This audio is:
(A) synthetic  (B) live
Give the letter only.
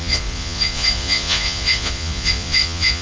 A